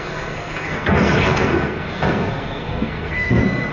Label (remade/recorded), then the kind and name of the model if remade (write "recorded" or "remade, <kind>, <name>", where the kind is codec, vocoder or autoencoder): remade, codec, SNAC